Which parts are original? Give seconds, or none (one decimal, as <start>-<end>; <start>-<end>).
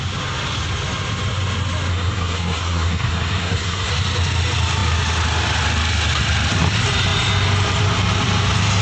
0.0-1.9; 3.9-8.8